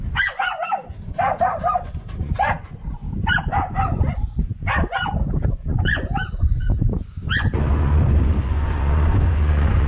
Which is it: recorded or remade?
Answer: remade